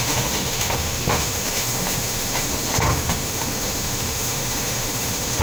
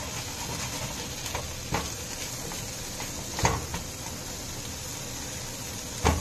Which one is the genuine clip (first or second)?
second